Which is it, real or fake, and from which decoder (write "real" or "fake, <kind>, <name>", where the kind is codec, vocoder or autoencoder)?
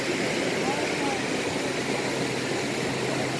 real